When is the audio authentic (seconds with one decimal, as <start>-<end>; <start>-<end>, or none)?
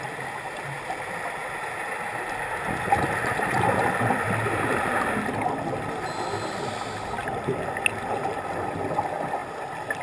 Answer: 0.0-10.0